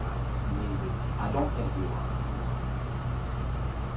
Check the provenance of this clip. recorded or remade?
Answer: recorded